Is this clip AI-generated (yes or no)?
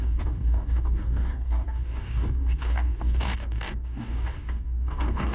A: yes